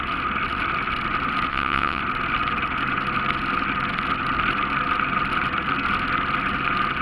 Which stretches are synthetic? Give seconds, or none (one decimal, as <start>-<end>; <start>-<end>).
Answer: 1.5-2.0